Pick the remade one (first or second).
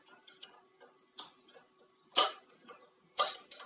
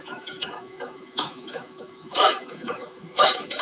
second